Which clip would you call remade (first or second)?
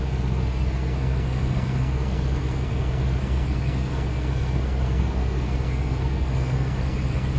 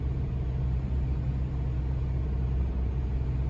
first